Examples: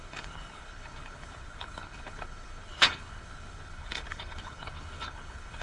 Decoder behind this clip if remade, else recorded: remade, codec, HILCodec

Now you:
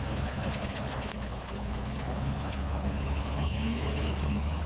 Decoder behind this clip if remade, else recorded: remade, codec, HILCodec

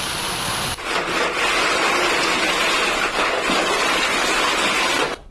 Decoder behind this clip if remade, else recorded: recorded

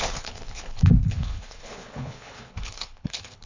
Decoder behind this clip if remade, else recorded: remade, codec, HILCodec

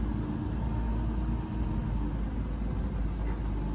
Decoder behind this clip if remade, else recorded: recorded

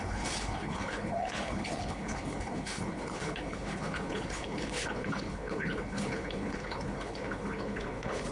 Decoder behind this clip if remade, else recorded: remade, codec, HILCodec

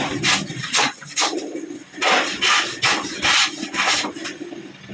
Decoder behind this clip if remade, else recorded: recorded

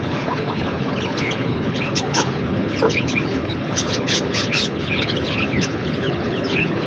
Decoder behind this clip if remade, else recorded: remade, codec, HILCodec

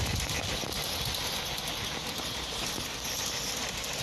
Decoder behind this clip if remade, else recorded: recorded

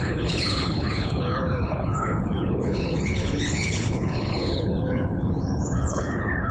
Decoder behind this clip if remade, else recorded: remade, codec, HILCodec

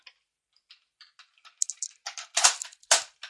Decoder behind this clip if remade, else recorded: recorded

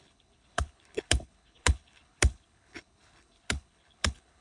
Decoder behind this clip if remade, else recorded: remade, codec, HILCodec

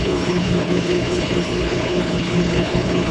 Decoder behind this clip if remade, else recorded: remade, codec, HILCodec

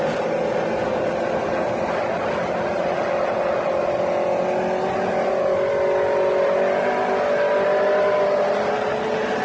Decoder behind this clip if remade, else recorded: recorded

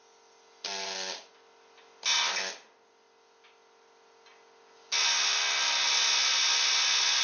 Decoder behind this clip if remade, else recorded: recorded